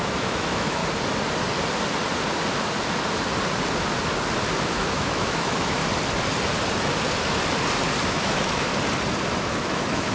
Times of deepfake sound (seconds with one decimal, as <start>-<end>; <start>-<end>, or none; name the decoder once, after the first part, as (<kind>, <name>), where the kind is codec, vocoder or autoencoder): 0.0-0.8 (autoencoder, DAC-VAE); 4.6-5.8; 8.1-8.7; 9.4-10.1